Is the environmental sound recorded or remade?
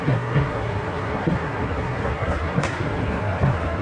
remade